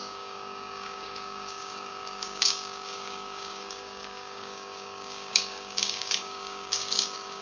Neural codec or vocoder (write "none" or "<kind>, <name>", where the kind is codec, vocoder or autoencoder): codec, DAC